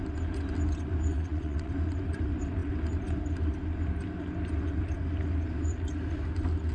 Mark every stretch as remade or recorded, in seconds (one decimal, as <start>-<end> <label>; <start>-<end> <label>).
0.0-1.1 recorded; 1.1-1.7 remade; 1.7-6.7 recorded